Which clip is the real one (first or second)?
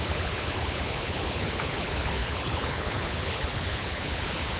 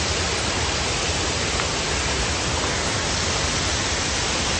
second